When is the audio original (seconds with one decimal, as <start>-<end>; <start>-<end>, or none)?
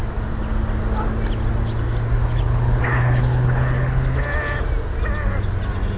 0.0-2.2; 4.0-6.0